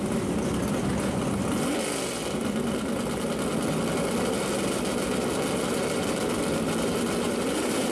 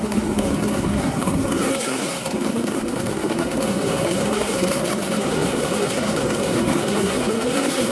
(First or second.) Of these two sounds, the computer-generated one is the second